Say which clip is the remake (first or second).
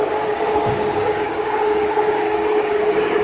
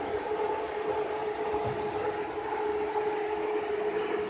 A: first